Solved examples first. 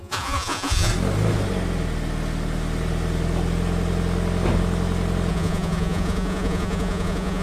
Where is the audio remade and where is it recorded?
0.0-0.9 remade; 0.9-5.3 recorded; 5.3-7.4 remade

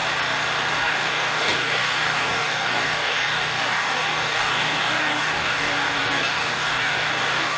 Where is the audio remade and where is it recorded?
0.0-0.7 recorded; 0.7-7.6 remade

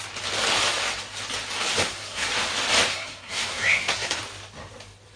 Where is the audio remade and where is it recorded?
0.0-1.8 recorded; 1.8-2.3 remade; 2.3-2.9 recorded; 2.9-4.2 remade; 4.2-5.2 recorded

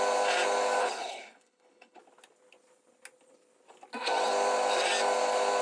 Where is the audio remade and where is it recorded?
0.0-0.8 recorded; 0.8-2.0 remade; 2.0-5.6 recorded

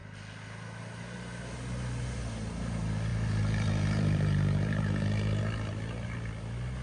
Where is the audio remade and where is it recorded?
0.0-3.1 recorded; 3.1-5.4 remade; 5.4-6.8 recorded